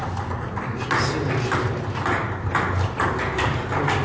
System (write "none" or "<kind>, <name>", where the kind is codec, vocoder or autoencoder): none